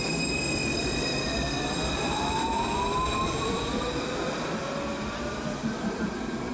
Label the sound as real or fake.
fake